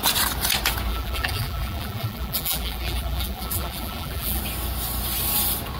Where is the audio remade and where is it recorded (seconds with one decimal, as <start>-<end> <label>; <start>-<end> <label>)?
0.0-0.9 recorded; 0.9-4.4 remade; 4.4-5.8 recorded